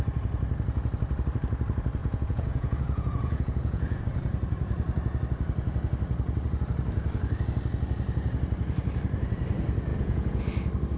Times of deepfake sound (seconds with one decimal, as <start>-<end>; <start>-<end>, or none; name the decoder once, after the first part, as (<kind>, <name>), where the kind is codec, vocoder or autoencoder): 2.0-4.0 (vocoder, Vocos); 9.9-10.4

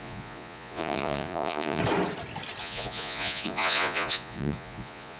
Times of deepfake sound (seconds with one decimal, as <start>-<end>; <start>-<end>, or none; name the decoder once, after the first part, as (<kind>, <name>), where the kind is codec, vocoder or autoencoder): 0.0-1.8 (vocoder, Vocos); 2.6-5.2

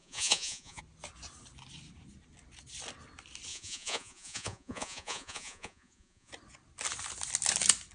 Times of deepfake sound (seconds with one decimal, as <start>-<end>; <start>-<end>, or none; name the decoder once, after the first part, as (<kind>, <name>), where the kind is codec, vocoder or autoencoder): 0.0-0.8 (vocoder, Vocos); 3.5-6.3

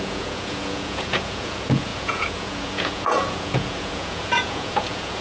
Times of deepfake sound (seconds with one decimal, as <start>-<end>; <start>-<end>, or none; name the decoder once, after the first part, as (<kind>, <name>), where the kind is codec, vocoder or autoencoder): 0.0-5.2 (vocoder, Vocos)

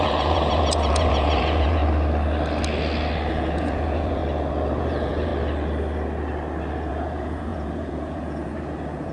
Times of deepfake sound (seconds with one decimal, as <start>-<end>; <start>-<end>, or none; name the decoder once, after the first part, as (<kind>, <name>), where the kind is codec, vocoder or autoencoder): 0.0-1.8 (vocoder, Vocos); 3.3-4.2; 4.8-5.3; 6.9-9.1

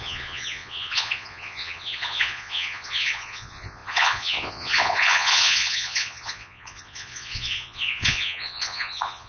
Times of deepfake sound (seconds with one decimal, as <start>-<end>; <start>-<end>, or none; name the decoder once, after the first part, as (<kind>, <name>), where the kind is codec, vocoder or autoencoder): 0.0-9.3 (vocoder, Vocos)

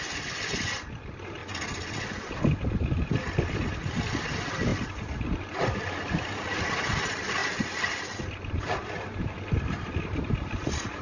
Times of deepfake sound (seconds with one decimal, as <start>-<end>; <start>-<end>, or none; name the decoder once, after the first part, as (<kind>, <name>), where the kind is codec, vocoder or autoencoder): none

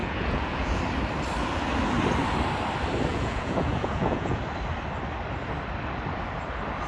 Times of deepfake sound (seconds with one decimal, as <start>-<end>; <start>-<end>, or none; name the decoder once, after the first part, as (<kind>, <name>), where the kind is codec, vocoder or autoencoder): 0.0-0.8 (vocoder, Vocos); 3.1-4.4